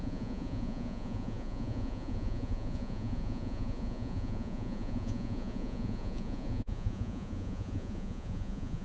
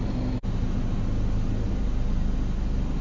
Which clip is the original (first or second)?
second